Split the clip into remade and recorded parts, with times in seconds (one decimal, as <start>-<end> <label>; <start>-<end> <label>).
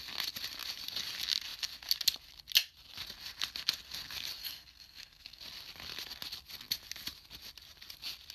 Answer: 0.0-4.4 recorded; 4.4-5.4 remade; 5.4-8.3 recorded